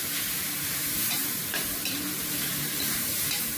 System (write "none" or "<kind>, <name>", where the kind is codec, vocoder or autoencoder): vocoder, BigVGAN v2